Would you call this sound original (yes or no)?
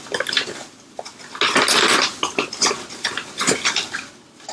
yes